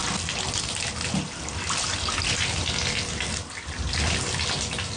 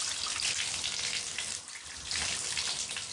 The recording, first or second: first